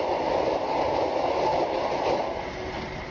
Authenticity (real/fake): real